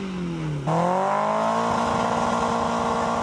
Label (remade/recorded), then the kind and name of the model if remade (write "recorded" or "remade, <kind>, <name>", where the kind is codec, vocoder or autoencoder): recorded